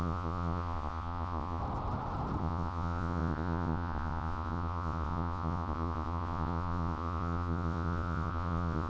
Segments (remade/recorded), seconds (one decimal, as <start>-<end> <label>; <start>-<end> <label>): 0.0-1.6 remade; 1.6-2.4 recorded; 2.4-8.9 remade